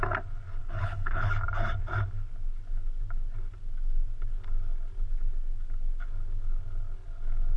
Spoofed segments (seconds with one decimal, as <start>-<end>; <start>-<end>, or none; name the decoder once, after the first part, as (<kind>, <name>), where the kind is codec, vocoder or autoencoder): 0.6-1.3 (codec, HILCodec)